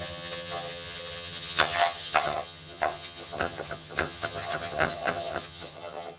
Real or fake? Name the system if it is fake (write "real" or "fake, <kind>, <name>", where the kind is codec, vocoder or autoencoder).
fake, vocoder, HiFi-GAN